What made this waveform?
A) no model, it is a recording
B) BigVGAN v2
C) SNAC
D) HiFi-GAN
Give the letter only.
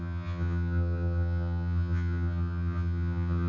D